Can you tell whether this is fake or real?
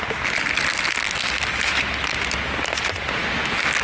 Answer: real